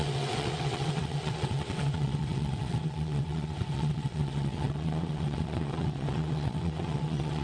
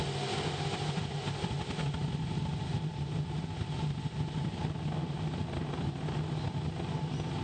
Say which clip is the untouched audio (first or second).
second